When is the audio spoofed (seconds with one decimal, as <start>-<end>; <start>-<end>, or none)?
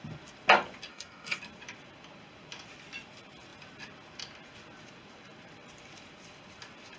0.9-1.4